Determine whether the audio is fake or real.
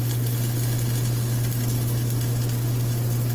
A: real